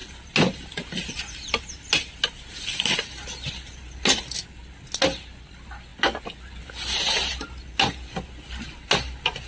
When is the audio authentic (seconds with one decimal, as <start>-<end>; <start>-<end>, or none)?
0.0-9.5